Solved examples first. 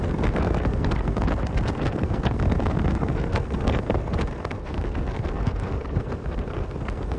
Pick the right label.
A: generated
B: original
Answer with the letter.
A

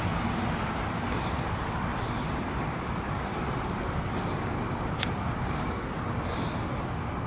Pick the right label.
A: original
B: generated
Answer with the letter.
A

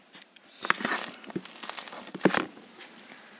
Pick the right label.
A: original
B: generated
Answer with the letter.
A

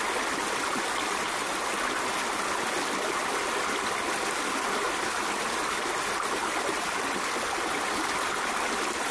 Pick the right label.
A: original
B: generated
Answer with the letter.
A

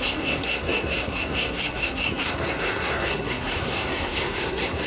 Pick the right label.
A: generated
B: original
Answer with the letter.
A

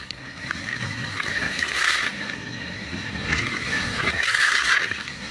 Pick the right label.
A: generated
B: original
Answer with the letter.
A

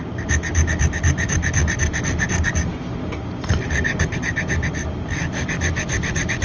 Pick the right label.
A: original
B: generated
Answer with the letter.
A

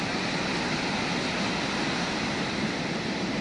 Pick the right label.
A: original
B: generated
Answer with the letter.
A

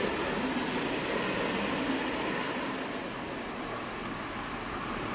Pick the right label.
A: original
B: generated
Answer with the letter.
A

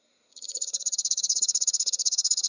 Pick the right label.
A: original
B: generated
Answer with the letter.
B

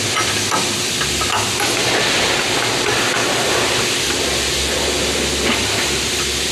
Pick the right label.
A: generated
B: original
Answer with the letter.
B